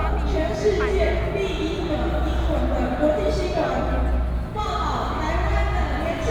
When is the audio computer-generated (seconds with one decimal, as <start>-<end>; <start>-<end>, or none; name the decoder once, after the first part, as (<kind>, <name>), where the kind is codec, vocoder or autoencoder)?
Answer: none